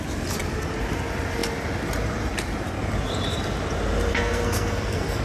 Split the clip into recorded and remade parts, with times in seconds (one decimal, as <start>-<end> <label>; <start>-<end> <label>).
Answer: 0.0-4.1 recorded; 4.1-5.2 remade